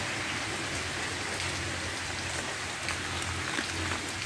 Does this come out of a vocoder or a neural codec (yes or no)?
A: no